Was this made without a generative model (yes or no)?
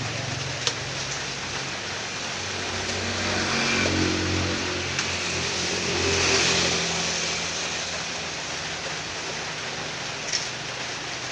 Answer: yes